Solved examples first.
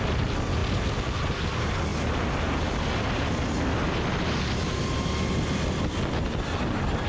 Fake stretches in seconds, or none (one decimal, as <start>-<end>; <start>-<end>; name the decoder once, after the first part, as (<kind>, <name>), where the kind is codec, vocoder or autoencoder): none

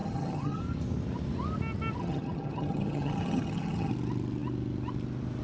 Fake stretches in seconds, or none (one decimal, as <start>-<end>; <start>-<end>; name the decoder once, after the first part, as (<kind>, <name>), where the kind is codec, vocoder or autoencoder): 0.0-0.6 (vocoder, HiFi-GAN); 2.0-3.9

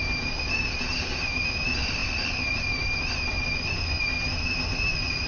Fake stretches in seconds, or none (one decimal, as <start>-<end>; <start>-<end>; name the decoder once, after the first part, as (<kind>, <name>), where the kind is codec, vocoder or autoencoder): none

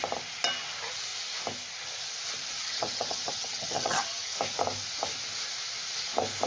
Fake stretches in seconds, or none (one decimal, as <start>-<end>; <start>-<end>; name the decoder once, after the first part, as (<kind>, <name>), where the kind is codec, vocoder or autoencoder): 2.6-4.3 (vocoder, HiFi-GAN)

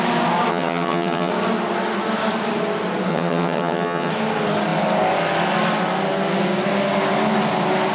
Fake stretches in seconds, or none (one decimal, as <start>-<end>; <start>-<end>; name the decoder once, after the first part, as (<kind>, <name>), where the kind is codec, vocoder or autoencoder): 0.5-1.3 (vocoder, HiFi-GAN); 3.1-4.1

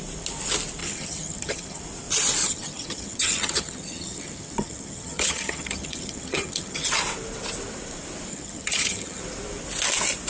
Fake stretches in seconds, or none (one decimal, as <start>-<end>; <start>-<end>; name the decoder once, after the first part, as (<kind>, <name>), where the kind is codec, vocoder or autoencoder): 0.8-1.8 (vocoder, HiFi-GAN); 2.4-6.9; 8.3-9.2

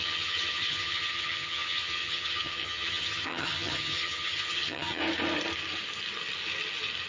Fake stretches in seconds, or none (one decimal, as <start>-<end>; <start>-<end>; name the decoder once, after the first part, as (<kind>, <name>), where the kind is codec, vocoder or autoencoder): 0.0-5.0 (vocoder, HiFi-GAN)